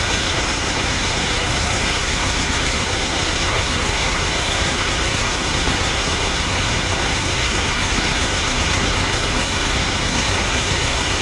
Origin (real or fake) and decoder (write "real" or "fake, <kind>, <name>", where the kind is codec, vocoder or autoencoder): fake, codec, SNAC